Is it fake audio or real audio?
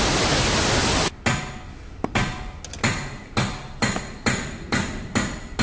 real